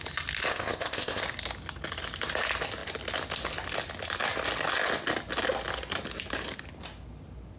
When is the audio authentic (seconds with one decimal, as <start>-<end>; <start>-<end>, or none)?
0.0-0.5; 1.2-7.6